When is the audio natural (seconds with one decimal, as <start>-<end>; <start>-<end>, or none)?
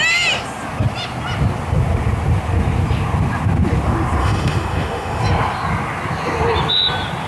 0.0-4.2; 5.2-7.3